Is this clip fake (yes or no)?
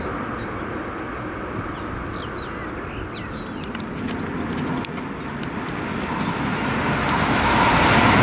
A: no